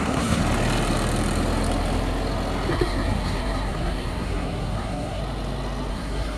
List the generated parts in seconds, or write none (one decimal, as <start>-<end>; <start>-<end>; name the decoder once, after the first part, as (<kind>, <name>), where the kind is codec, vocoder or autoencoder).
0.0-0.4 (codec, SNAC); 2.7-5.2; 5.9-6.4